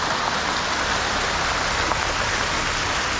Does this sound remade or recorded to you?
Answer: recorded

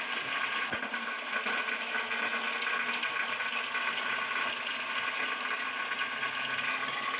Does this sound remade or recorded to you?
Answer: recorded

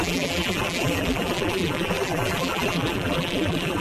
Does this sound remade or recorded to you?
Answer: remade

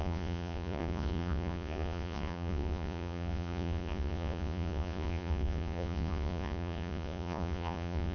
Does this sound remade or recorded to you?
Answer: remade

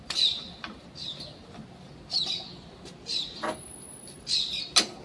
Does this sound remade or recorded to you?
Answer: recorded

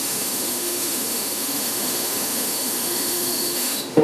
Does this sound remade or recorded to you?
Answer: remade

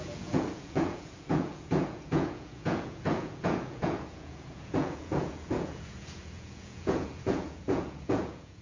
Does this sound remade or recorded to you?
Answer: remade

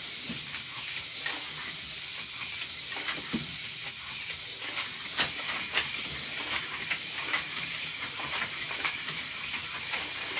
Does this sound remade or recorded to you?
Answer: remade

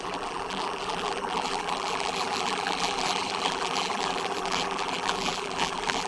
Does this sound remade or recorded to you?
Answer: remade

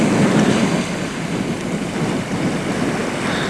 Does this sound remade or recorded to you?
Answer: recorded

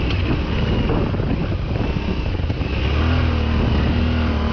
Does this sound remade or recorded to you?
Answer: recorded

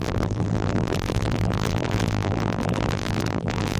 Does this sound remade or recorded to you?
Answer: remade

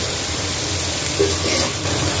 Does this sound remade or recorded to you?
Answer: recorded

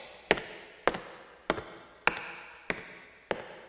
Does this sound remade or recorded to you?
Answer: recorded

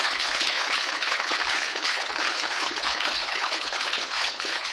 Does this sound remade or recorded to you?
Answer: remade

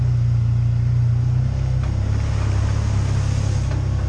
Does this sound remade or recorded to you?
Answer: recorded